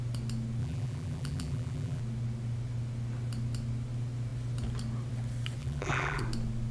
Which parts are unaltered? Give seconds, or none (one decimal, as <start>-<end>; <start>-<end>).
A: 0.0-0.6; 2.0-5.6; 6.2-6.7